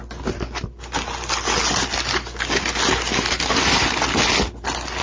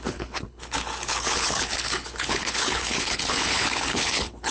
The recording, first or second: first